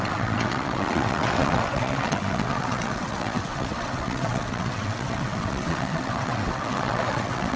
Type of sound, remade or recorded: remade